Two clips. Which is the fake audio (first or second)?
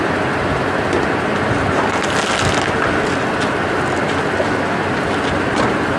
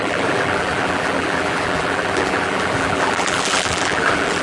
second